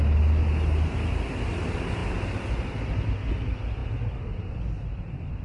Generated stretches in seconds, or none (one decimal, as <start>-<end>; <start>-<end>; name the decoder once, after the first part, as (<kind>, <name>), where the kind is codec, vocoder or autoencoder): none